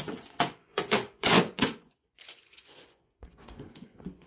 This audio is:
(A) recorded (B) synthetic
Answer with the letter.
B